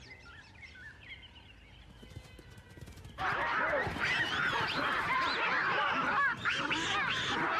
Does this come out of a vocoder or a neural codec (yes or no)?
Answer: no